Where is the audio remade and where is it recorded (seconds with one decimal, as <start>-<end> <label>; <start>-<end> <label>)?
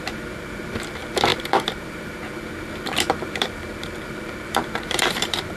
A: 0.0-5.6 remade